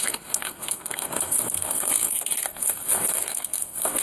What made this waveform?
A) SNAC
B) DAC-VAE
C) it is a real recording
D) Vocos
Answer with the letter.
A